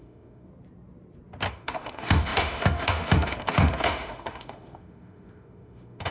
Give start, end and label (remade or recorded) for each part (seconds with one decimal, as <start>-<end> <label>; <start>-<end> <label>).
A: 0.0-0.5 remade; 0.5-1.5 recorded; 1.5-6.1 remade